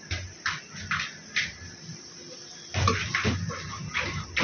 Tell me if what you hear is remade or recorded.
recorded